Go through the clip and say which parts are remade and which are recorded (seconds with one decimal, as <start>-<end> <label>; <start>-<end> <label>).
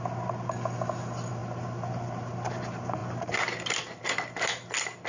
0.0-5.1 recorded